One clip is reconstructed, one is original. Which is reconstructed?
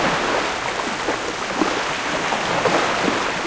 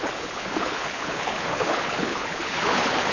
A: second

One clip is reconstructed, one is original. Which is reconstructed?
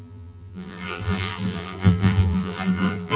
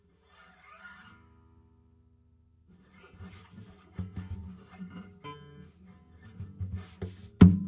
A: first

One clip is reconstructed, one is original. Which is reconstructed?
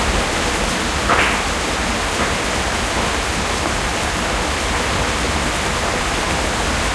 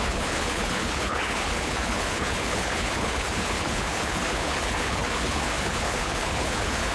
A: second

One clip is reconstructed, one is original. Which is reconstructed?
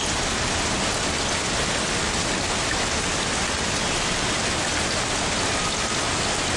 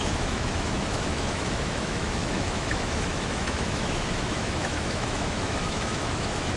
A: second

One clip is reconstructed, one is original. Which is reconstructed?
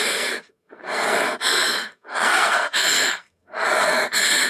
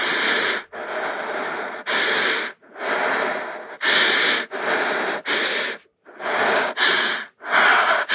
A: first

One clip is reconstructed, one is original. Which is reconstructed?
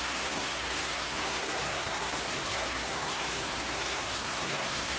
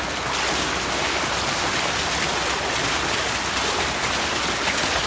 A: first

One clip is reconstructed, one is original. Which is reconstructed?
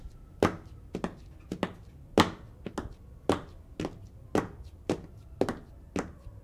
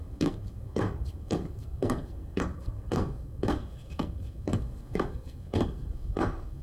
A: second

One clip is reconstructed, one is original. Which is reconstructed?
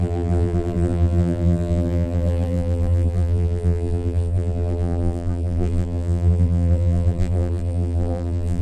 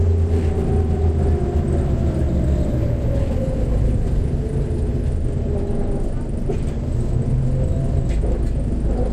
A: first